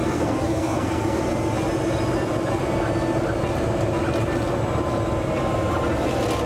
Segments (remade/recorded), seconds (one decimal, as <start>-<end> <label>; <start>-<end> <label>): 0.0-1.2 remade; 1.2-6.5 recorded